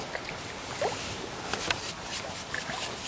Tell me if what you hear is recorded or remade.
recorded